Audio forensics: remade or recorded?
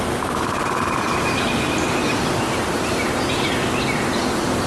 remade